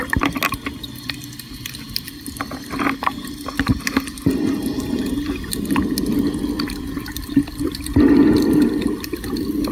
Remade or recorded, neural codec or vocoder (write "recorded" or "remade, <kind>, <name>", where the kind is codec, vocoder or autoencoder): recorded